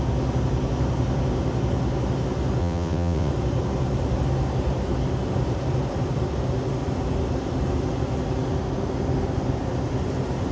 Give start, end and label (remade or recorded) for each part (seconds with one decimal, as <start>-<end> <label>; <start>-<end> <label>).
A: 0.0-2.6 recorded; 2.6-3.3 remade; 3.3-10.5 recorded